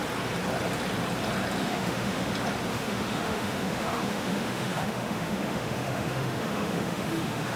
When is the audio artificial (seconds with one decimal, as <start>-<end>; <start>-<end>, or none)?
1.6-2.3; 2.7-7.6